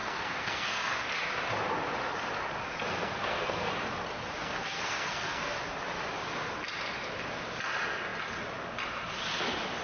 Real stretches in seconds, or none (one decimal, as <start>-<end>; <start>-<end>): 1.1-2.9; 3.7-4.4; 5.5-9.8